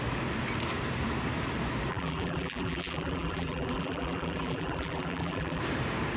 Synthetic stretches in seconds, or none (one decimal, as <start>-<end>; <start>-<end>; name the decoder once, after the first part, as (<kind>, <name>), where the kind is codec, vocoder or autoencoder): 1.9-5.6 (vocoder, BigVGAN v2)